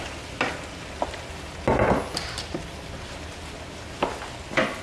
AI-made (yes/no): no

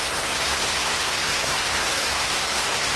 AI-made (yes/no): yes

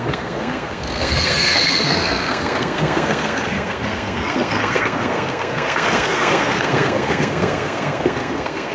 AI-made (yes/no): yes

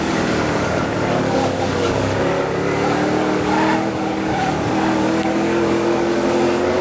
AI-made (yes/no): yes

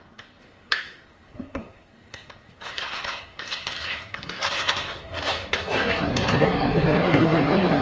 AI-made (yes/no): yes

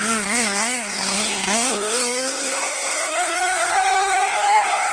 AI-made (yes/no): yes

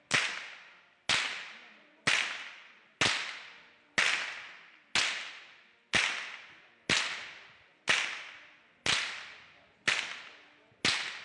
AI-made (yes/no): no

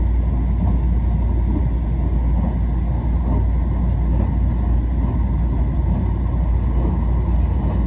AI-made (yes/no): no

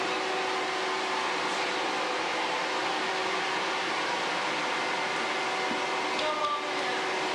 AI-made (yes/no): no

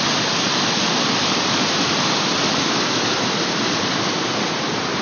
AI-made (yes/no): yes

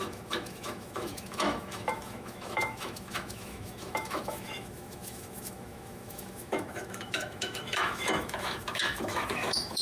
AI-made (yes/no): yes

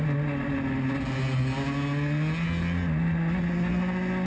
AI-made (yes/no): no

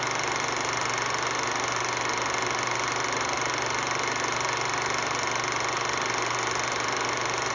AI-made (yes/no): no